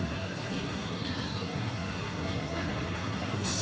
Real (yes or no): no